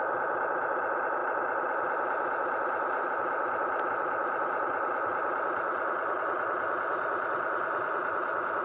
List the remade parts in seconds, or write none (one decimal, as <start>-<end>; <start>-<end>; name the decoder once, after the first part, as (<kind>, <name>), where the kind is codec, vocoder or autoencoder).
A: none